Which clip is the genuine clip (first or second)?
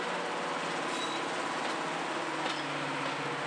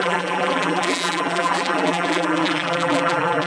first